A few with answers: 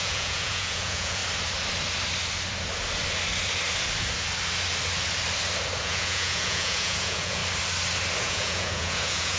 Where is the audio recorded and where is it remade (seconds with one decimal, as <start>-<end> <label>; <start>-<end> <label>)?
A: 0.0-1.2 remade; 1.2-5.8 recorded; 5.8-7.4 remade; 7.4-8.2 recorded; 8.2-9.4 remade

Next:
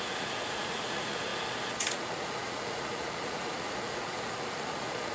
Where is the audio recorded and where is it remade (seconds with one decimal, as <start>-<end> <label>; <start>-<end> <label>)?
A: 0.0-1.3 remade; 1.3-1.8 recorded; 1.8-5.1 remade

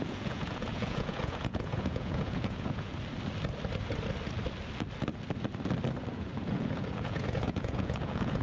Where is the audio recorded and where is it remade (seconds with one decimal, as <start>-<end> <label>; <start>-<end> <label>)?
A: 0.0-2.9 remade; 2.9-6.1 recorded; 6.1-8.4 remade

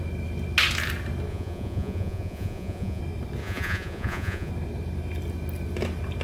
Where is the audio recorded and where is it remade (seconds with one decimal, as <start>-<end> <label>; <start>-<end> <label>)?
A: 0.0-1.3 recorded; 1.3-3.0 remade; 3.0-3.4 recorded; 3.4-4.5 remade; 4.5-6.2 recorded

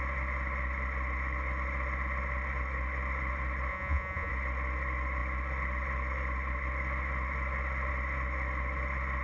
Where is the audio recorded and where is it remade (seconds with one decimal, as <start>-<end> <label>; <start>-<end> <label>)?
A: 0.0-3.7 recorded; 3.7-4.3 remade; 4.3-9.2 recorded